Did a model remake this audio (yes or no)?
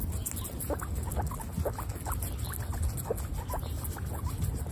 no